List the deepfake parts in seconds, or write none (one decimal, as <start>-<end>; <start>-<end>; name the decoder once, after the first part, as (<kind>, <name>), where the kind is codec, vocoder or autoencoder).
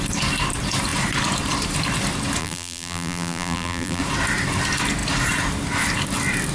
2.4-4.0 (vocoder, BigVGAN v2)